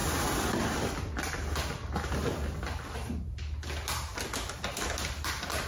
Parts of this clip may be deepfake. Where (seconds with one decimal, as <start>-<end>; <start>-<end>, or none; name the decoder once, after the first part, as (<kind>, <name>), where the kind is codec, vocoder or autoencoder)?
0.0-1.8 (vocoder, BigVGAN v2); 5.2-5.7